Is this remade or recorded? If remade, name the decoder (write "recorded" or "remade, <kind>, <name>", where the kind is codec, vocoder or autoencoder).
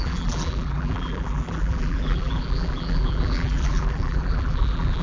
remade, vocoder, BigVGAN v2